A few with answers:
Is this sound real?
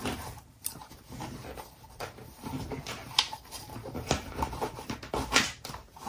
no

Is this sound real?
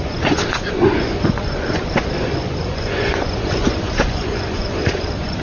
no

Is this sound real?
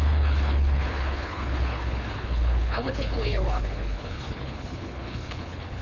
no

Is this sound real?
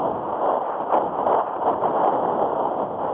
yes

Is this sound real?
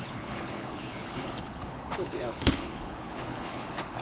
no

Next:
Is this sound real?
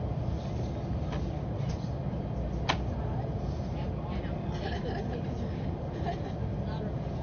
yes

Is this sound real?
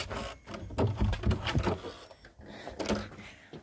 yes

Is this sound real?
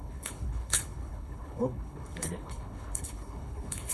no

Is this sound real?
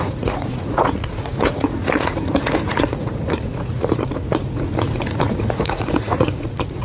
no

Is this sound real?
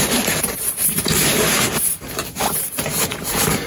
no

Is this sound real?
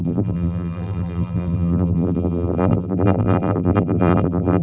no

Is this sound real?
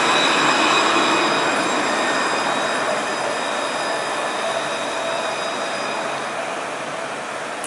yes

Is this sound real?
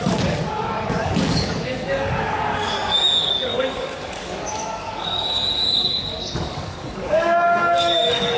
no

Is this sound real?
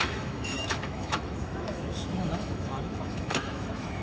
no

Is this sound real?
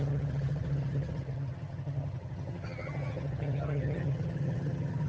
no